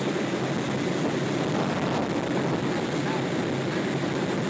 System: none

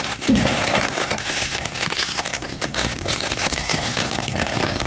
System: codec, SNAC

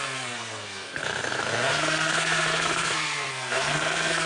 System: codec, SNAC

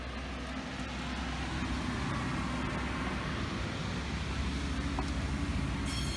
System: none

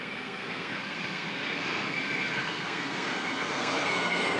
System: codec, SNAC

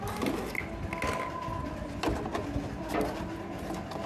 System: none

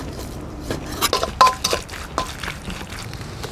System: none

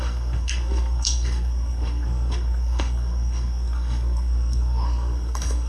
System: codec, SNAC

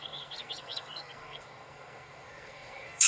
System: codec, SNAC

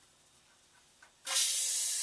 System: none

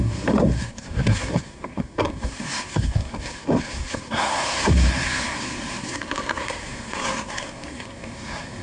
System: codec, SNAC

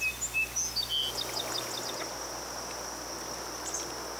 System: none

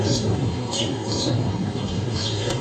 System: codec, SNAC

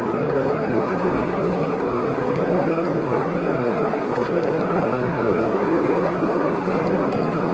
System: codec, SNAC